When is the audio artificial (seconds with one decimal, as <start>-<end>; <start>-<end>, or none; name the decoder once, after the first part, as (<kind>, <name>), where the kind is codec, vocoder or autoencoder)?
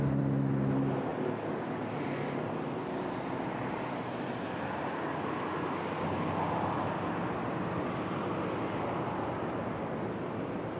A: none